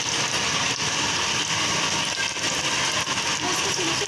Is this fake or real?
fake